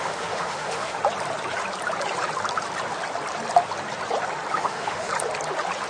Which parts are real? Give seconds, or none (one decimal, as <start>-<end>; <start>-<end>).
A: 1.0-4.5; 5.1-5.9